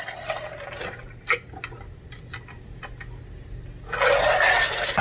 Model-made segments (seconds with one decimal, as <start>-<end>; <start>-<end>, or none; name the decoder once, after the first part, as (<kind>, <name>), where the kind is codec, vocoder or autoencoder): none